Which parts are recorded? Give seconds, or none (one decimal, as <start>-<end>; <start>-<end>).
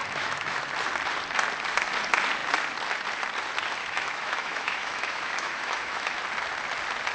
0.6-3.8; 6.2-7.1